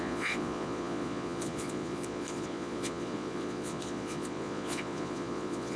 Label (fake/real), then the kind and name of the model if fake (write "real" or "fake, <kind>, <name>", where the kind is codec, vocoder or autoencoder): fake, vocoder, Vocos